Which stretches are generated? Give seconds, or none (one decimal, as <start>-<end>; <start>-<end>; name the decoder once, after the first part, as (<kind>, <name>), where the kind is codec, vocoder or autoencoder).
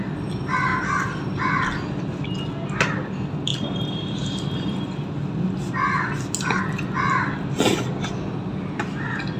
none